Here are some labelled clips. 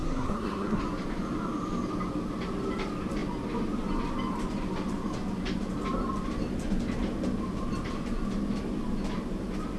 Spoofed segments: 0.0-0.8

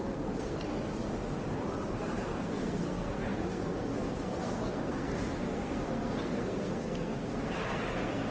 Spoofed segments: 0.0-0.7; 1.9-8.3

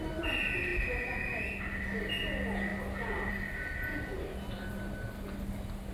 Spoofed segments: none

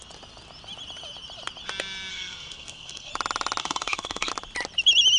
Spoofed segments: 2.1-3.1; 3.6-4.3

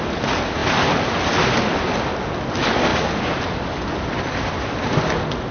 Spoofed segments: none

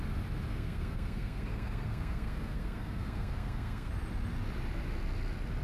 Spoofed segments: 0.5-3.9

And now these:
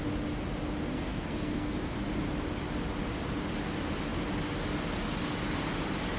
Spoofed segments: 0.9-1.7

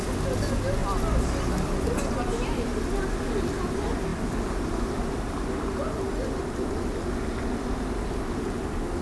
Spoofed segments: none